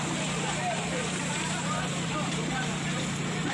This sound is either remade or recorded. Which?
remade